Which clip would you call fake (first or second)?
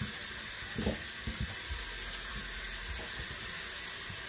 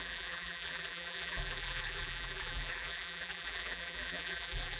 second